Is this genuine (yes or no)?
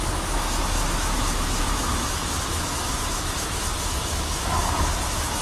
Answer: no